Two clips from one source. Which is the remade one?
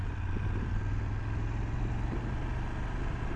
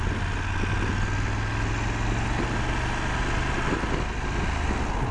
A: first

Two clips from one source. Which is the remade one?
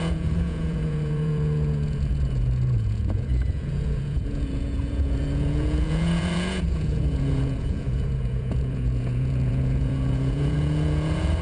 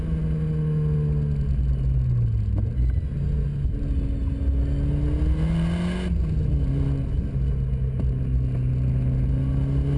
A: first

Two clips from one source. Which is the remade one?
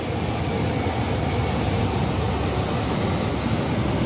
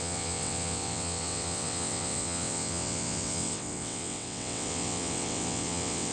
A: second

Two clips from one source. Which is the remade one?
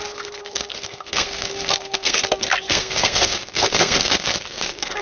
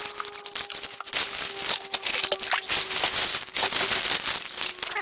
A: first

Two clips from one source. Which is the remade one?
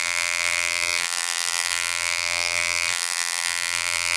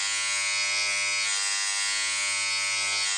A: first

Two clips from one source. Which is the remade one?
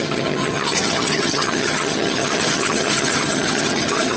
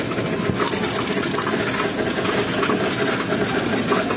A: first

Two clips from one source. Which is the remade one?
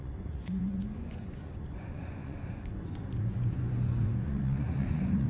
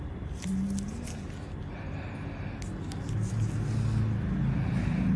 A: first